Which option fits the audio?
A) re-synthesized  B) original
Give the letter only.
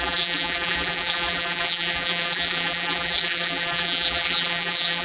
A